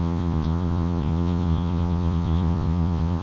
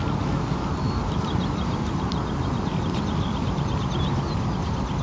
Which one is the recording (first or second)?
second